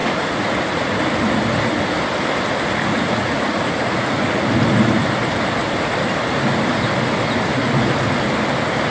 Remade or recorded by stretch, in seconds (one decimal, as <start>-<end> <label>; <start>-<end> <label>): 0.0-0.9 remade; 0.9-2.9 recorded; 2.9-4.4 remade; 4.4-8.9 recorded